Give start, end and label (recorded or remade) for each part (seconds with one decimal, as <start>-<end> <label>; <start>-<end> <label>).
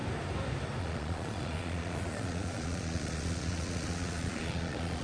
0.0-0.8 recorded; 0.8-5.0 remade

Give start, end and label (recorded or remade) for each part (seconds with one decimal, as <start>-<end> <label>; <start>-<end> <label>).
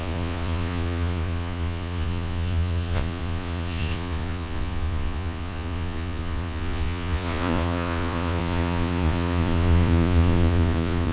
0.0-11.1 remade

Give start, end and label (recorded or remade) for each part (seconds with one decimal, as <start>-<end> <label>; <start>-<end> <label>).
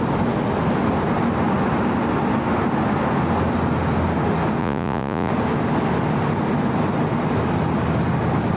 0.0-4.6 recorded; 4.6-5.3 remade; 5.3-8.6 recorded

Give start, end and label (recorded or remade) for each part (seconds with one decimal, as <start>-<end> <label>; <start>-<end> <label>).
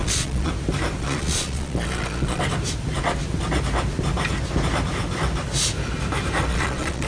0.0-0.5 remade; 0.5-1.0 recorded; 1.0-2.4 remade; 2.4-6.5 recorded; 6.5-7.1 remade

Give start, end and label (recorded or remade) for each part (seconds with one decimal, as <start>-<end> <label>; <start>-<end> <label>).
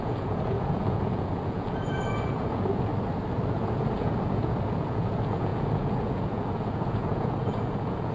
0.0-2.9 remade; 2.9-3.5 recorded; 3.5-8.1 remade